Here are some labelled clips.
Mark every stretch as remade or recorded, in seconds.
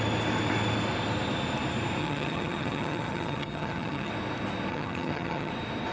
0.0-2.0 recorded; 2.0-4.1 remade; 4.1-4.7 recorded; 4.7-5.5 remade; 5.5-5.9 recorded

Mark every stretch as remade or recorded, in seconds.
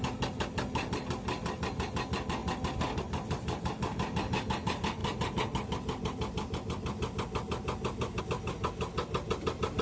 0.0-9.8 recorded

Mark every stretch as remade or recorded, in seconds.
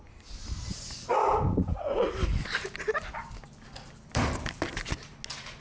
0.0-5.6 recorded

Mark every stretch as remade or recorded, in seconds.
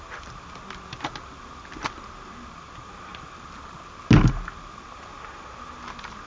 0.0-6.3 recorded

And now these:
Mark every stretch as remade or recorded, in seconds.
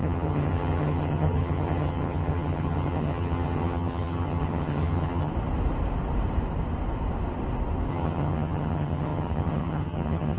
0.0-5.3 remade; 5.3-7.9 recorded; 7.9-10.4 remade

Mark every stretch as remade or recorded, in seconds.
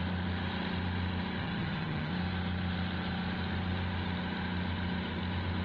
0.0-1.4 recorded; 1.4-2.1 remade; 2.1-5.6 recorded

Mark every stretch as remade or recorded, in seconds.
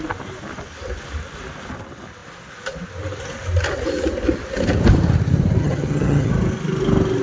0.0-5.6 recorded; 5.6-6.3 remade; 6.3-7.2 recorded